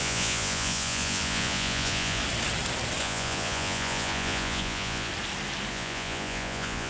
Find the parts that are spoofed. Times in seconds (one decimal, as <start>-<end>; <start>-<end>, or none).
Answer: 0.0-2.2; 3.0-5.1; 5.7-6.9

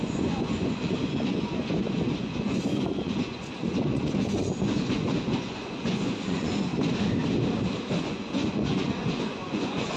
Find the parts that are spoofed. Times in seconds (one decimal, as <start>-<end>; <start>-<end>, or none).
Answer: 0.0-6.7; 7.9-10.0

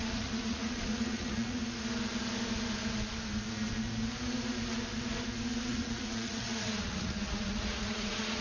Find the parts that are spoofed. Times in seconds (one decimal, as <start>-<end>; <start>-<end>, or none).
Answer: 0.0-1.6; 5.7-8.4

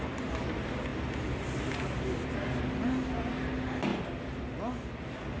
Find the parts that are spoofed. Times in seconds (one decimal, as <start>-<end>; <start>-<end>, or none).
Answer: none

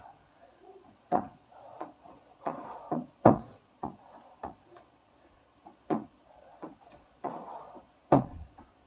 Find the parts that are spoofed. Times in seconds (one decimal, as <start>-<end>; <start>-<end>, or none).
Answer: 0.0-8.9

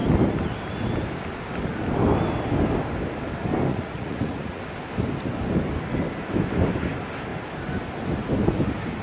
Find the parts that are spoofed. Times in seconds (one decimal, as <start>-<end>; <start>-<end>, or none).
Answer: 3.7-4.6